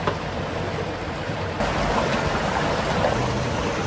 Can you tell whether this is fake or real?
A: real